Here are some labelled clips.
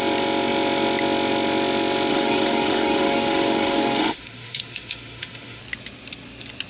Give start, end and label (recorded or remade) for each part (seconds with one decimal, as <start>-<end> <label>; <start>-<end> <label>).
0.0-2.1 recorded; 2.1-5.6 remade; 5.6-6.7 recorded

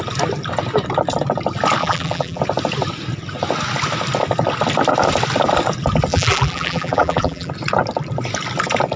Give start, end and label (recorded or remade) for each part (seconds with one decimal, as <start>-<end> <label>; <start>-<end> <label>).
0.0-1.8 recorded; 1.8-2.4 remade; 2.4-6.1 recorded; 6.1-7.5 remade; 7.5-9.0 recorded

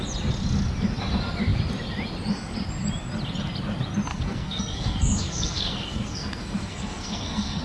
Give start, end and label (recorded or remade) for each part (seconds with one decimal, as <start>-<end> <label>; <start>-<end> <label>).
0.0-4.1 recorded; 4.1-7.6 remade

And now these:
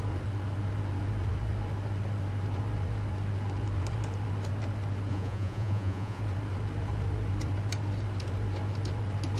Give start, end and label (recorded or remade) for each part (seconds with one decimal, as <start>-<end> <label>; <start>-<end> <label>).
0.0-5.1 recorded; 5.1-6.2 remade; 6.2-9.4 recorded

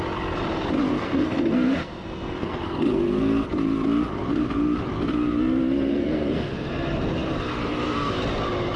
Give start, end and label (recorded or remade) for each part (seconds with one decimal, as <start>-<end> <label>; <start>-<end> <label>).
0.0-0.9 recorded; 0.9-3.5 remade; 3.5-5.9 recorded; 5.9-6.7 remade; 6.7-7.5 recorded; 7.5-8.1 remade; 8.1-8.8 recorded

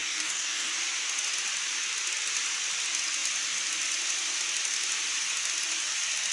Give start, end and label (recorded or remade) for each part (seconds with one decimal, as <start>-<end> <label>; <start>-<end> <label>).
0.0-0.7 remade; 0.7-6.3 recorded